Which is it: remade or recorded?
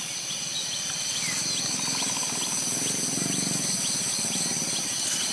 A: recorded